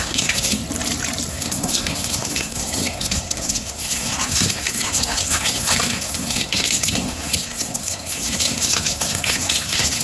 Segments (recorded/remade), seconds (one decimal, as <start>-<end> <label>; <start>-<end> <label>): 0.0-0.6 remade; 0.6-1.3 recorded; 1.3-10.0 remade